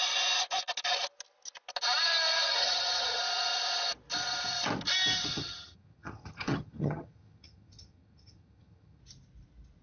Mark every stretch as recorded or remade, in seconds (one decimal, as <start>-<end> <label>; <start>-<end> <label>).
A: 0.0-2.5 recorded; 2.5-3.2 remade; 3.2-5.3 recorded; 5.3-9.0 remade; 9.0-9.8 recorded

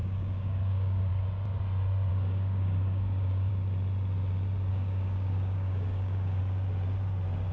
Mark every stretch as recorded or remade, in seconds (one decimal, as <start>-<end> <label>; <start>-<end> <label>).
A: 0.0-1.1 remade; 1.1-2.1 recorded; 2.1-3.5 remade; 3.5-4.7 recorded; 4.7-6.4 remade; 6.4-7.5 recorded

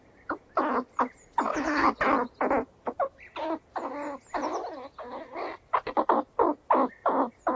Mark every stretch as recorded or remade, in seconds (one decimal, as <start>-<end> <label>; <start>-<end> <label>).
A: 0.0-1.5 recorded; 1.5-2.0 remade; 2.0-7.6 recorded

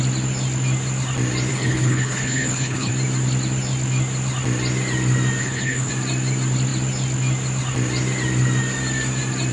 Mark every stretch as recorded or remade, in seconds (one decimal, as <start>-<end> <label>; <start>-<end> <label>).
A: 0.0-1.5 recorded; 1.5-2.9 remade; 2.9-5.4 recorded; 5.4-5.9 remade; 5.9-9.5 recorded

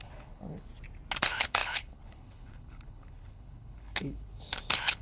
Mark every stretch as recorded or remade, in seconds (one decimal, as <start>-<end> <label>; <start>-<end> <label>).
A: 0.0-0.7 remade; 0.7-1.2 recorded; 1.2-5.0 remade

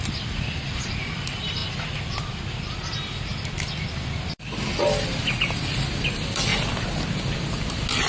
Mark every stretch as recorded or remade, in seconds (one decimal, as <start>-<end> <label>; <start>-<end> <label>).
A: 0.0-1.6 remade; 1.6-2.2 recorded; 2.2-3.3 remade; 3.3-4.2 recorded; 4.2-6.5 remade; 6.5-8.1 recorded

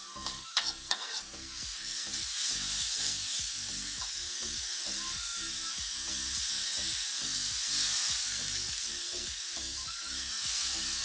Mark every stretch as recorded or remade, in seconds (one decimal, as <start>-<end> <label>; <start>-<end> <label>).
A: 0.0-11.0 remade

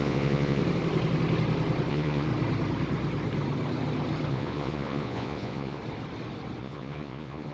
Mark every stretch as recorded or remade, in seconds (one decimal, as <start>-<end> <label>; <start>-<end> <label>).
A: 0.0-0.6 remade; 0.6-1.9 recorded; 1.9-2.3 remade; 2.3-4.3 recorded; 4.3-5.8 remade; 5.8-6.6 recorded; 6.6-7.5 remade